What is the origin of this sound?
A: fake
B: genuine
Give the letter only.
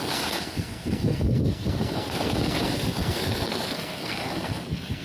A